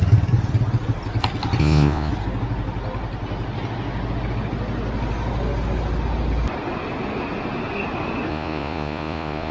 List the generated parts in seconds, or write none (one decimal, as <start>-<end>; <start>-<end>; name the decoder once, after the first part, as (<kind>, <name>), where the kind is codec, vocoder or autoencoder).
1.6-2.1 (vocoder, Vocos); 8.3-9.5